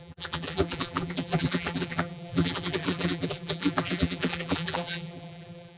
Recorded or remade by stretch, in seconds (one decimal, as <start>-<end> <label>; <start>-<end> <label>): 0.0-5.8 remade